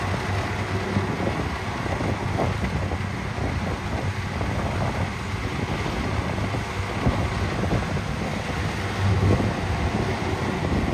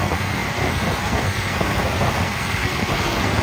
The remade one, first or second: second